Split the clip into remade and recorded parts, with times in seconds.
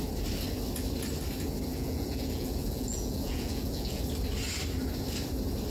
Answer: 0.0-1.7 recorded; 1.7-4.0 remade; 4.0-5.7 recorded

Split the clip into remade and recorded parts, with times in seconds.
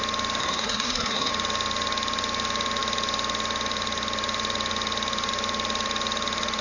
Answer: 0.0-0.4 recorded; 0.4-1.3 remade; 1.3-6.6 recorded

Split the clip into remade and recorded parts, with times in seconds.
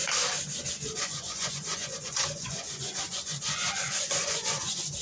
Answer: 0.0-1.0 recorded; 1.0-5.0 remade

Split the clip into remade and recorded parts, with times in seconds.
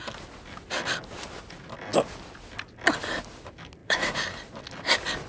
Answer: 0.0-3.8 recorded; 3.8-4.6 remade; 4.6-5.3 recorded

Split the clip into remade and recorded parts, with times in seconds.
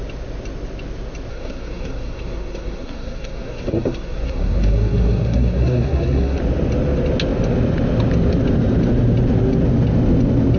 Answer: 0.0-1.3 recorded; 1.3-6.4 remade; 6.4-10.6 recorded